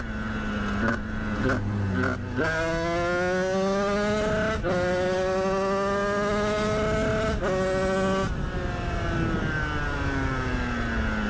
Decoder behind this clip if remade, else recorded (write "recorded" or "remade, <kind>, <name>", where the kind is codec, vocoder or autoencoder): recorded